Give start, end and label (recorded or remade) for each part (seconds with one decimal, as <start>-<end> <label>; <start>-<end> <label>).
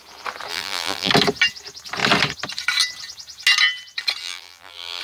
0.0-0.5 recorded; 0.5-1.1 remade; 1.1-4.2 recorded; 4.2-5.0 remade